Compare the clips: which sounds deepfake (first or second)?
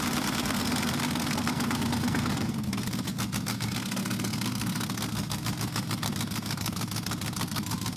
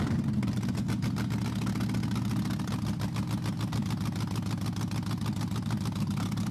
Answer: first